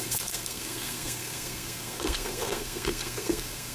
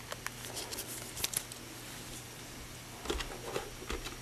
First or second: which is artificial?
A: first